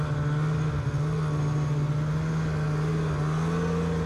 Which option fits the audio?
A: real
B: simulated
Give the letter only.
A